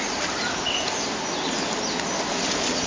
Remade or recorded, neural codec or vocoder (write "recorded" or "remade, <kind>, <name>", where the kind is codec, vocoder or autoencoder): recorded